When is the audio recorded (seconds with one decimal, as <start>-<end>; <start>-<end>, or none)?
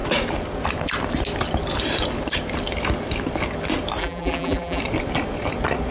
0.0-4.0; 4.8-5.9